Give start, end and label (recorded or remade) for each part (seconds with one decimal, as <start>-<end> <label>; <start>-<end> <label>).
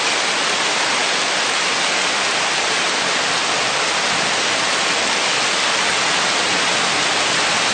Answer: 0.0-7.7 recorded